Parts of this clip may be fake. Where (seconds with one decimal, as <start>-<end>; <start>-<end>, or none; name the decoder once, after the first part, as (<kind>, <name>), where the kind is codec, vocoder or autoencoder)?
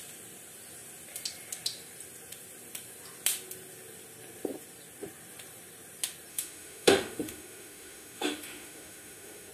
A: 6.3-9.5 (autoencoder, DAC-VAE)